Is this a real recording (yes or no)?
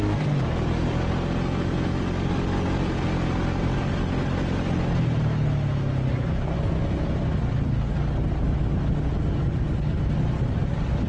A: yes